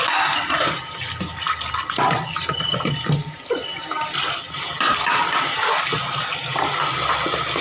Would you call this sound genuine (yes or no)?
yes